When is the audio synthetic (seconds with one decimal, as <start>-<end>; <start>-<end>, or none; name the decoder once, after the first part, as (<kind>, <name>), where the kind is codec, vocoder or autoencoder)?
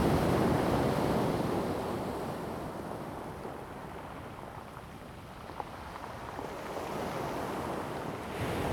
none